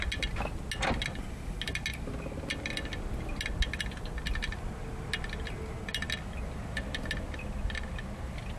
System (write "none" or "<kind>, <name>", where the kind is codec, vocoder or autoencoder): none